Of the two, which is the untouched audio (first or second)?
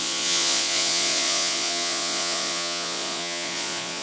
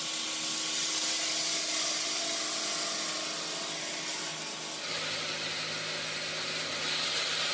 second